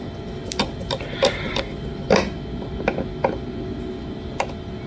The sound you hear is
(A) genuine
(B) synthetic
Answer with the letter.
A